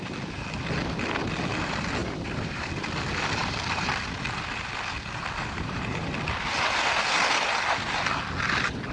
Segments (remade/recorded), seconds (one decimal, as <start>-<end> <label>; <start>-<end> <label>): 0.0-2.0 recorded; 2.0-2.7 remade; 2.7-3.4 recorded; 3.4-3.9 remade; 3.9-5.4 recorded; 5.4-6.1 remade; 6.1-8.9 recorded

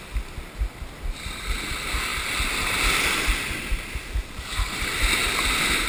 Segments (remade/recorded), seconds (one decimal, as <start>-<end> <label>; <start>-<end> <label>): 0.0-5.9 recorded

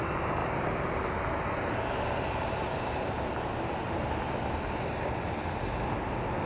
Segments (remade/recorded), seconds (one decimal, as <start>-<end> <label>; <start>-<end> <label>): 0.0-6.5 recorded

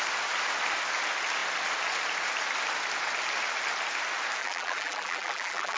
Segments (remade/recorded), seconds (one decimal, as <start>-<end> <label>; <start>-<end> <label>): 0.0-4.4 recorded; 4.4-5.8 remade

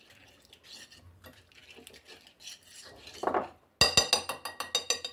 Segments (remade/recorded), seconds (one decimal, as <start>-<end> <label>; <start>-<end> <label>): 0.0-5.1 recorded